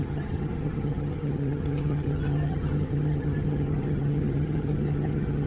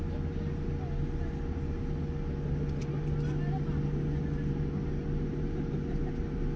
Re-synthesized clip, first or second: first